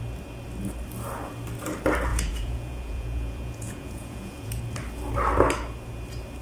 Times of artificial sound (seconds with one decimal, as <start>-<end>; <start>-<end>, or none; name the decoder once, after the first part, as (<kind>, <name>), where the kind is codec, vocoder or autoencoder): 2.1-4.6 (vocoder, Vocos)